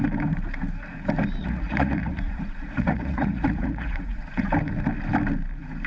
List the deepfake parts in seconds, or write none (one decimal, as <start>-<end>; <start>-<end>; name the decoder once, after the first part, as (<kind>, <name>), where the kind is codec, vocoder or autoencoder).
1.4-4.5 (vocoder, Vocos)